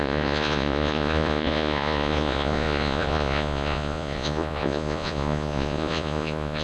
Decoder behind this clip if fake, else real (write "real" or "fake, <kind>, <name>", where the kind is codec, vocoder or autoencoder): fake, vocoder, Vocos